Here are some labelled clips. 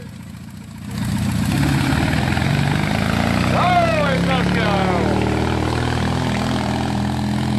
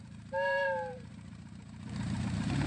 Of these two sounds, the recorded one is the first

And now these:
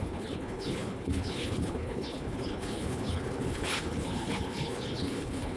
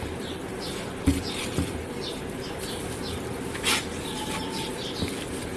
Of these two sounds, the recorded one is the second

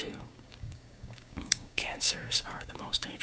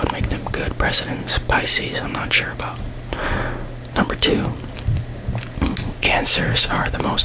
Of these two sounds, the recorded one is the second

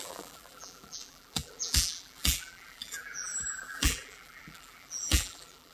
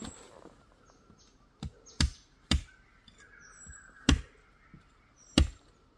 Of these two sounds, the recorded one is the second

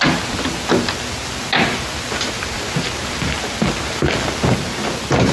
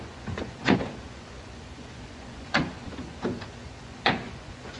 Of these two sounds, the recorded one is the first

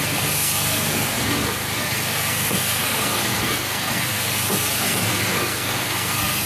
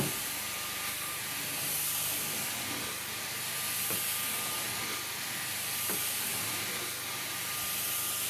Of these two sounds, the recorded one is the second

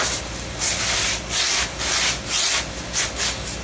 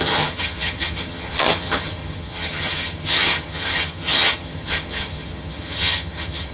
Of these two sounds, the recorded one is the first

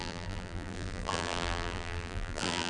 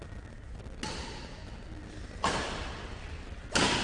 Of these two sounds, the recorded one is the second